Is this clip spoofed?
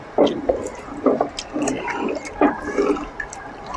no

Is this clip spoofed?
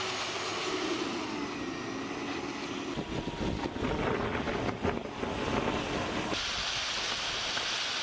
no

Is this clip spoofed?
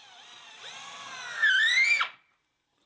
no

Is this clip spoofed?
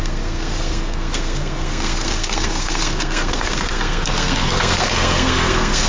yes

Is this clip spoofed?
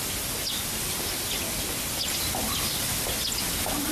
no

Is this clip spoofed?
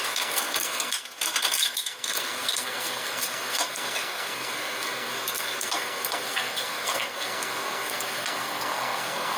yes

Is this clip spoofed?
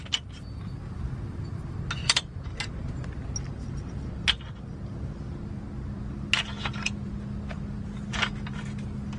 no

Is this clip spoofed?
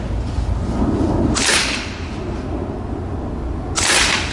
no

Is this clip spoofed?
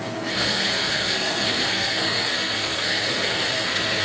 yes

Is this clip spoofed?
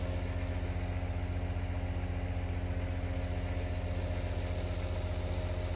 no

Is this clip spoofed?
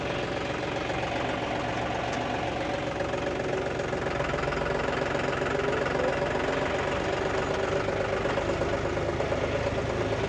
no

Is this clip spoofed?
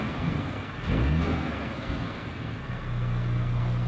yes